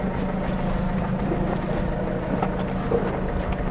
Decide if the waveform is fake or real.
real